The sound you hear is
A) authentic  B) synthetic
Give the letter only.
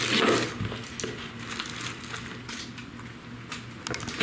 A